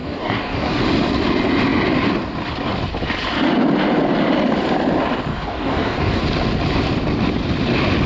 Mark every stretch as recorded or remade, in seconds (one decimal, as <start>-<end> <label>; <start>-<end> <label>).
0.0-0.8 remade; 0.8-5.3 recorded; 5.3-6.2 remade; 6.2-8.1 recorded